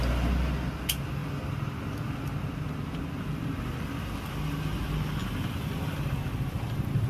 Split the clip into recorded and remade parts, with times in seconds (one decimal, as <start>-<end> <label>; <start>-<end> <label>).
0.0-7.1 recorded